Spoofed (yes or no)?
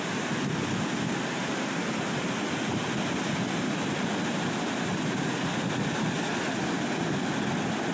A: no